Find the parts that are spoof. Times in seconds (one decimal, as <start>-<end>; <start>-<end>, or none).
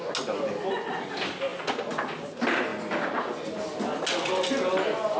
none